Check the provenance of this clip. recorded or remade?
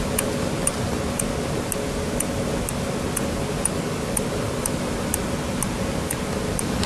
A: recorded